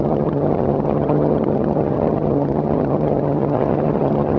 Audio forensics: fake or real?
fake